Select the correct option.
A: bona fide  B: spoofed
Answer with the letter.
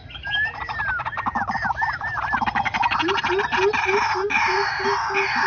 A